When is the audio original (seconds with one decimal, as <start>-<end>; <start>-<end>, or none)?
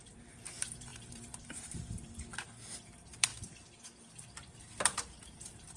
3.3-4.1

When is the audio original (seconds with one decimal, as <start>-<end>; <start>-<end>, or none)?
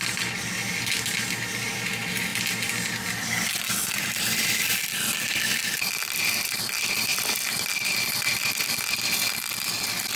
0.0-10.2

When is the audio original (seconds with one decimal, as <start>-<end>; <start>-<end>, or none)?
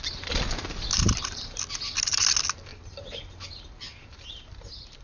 0.0-0.9; 1.6-2.7; 3.2-5.0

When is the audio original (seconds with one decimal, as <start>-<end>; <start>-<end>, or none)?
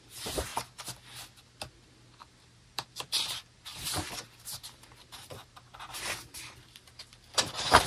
0.5-2.2